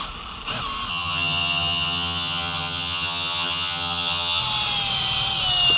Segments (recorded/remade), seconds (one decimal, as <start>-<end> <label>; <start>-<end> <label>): 0.0-0.9 recorded; 0.9-4.4 remade; 4.4-5.8 recorded